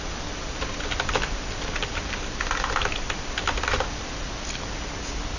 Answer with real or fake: real